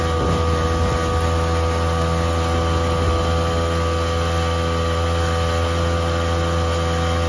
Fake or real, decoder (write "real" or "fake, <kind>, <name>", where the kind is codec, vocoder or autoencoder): real